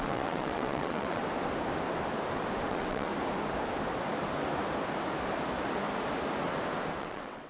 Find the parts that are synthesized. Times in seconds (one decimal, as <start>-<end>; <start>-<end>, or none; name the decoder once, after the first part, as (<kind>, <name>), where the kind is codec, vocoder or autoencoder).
0.0-1.2 (vocoder, WaveNeXt); 2.7-3.1; 7.0-7.5